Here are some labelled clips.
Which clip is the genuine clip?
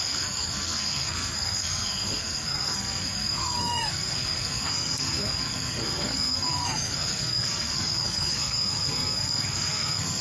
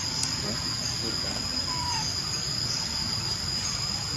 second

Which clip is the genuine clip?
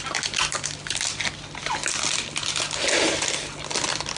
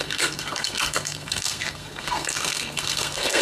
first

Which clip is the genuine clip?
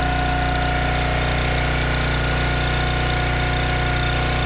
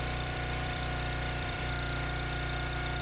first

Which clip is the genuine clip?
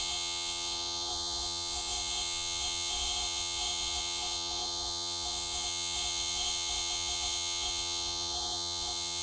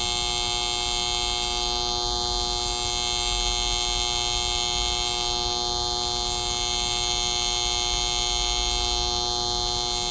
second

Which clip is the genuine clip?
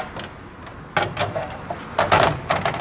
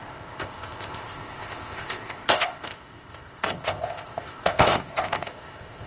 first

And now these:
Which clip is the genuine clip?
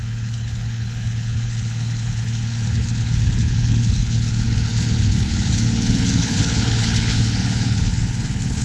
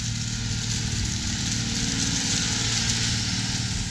second